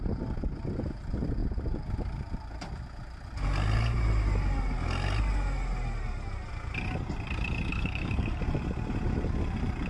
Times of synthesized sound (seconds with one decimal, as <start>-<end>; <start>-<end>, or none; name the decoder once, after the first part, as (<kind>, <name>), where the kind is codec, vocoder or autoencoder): 7.7-8.4 (codec, DAC)